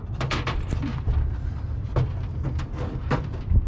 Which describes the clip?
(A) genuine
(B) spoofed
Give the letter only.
A